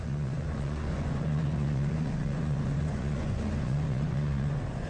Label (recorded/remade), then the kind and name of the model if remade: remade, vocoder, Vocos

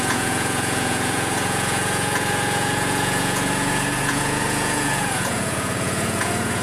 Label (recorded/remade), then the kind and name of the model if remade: remade, vocoder, Vocos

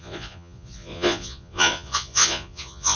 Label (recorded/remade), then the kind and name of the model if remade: remade, vocoder, Vocos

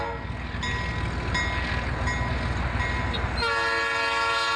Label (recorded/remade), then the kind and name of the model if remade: recorded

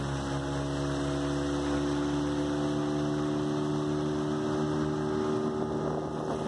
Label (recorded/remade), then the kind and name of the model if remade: recorded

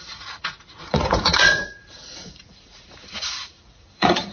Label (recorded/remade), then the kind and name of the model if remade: remade, vocoder, Vocos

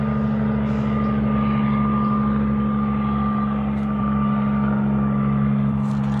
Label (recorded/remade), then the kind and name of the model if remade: recorded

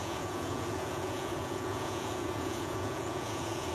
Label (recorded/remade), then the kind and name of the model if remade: remade, vocoder, Vocos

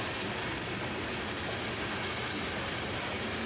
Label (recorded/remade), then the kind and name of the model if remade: recorded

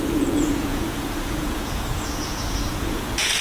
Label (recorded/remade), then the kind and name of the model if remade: remade, vocoder, Vocos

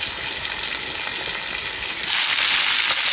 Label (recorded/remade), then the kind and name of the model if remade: recorded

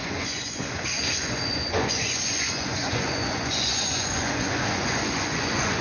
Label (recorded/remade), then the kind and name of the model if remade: remade, vocoder, Vocos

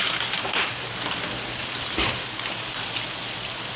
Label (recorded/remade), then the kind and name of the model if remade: recorded